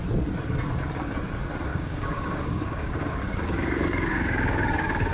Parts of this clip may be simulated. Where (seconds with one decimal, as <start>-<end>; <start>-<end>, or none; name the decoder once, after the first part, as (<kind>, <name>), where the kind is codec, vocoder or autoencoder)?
1.7-5.1 (codec, DAC)